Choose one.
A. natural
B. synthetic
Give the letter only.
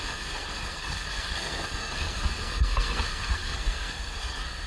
B